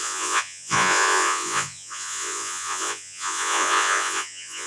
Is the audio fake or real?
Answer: fake